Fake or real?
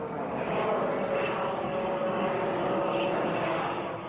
fake